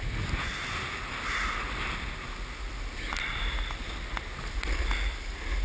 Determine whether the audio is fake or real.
real